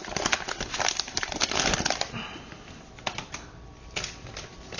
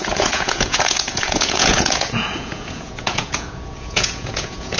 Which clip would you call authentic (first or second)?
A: first